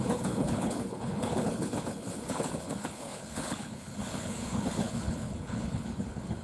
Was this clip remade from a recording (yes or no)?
yes